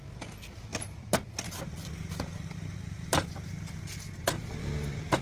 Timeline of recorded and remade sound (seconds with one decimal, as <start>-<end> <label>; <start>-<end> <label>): 0.0-5.2 recorded